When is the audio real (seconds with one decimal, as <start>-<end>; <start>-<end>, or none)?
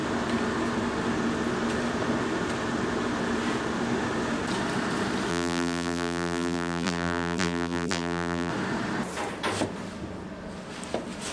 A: 0.0-5.3; 8.5-11.3